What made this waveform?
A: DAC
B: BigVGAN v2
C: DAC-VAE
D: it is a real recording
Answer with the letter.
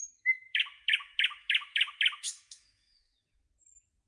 C